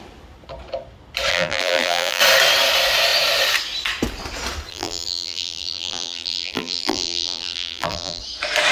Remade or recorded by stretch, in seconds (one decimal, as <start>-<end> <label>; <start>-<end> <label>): 0.0-1.3 recorded; 1.3-2.2 remade; 2.2-4.7 recorded; 4.7-8.2 remade; 8.2-8.7 recorded